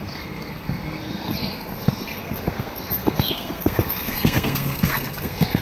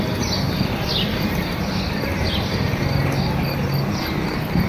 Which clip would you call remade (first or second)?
first